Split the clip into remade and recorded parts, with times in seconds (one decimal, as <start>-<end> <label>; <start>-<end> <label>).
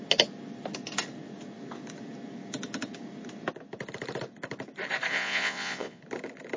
0.0-5.1 recorded; 5.1-6.0 remade; 6.0-6.6 recorded